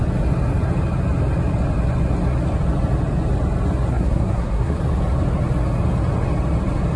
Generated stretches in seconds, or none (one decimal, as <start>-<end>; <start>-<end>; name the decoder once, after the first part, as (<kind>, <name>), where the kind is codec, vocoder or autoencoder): 3.9-4.8 (codec, SNAC)